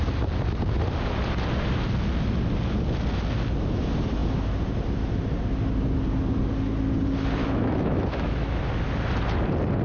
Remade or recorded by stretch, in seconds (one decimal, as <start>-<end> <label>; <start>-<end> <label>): 0.0-7.4 recorded; 7.4-8.6 remade; 8.6-9.8 recorded